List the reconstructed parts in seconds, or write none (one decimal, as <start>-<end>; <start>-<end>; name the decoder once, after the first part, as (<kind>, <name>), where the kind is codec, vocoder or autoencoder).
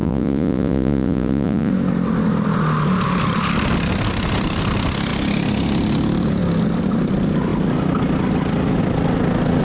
0.0-1.7 (vocoder, Vocos)